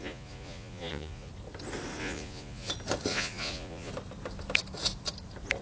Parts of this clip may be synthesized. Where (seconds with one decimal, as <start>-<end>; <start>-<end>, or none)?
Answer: 0.0-1.3; 2.0-2.7; 3.1-3.9